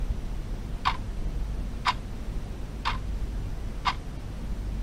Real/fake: real